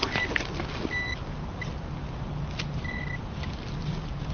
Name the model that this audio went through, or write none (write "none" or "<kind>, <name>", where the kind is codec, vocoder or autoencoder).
none